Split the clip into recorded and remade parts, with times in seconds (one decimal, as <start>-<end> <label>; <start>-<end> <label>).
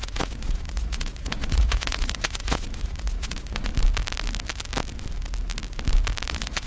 0.0-3.7 remade; 3.7-6.3 recorded; 6.3-6.7 remade